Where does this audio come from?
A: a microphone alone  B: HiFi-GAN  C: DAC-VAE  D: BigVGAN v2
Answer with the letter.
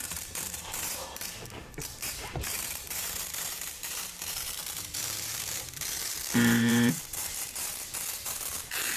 D